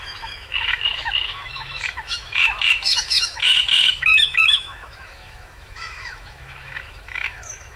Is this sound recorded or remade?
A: remade